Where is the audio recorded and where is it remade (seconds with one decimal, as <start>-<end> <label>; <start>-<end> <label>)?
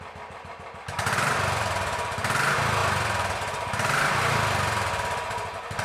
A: 0.0-5.8 recorded